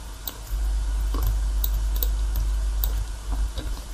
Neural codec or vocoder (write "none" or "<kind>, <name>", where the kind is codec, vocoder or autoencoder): none